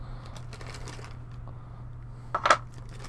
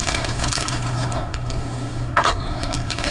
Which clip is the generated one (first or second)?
second